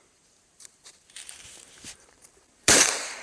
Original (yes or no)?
no